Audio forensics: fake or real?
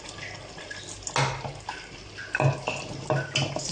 real